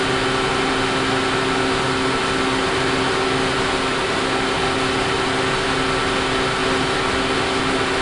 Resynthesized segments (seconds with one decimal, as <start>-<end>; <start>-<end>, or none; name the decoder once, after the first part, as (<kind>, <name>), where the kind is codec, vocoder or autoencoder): none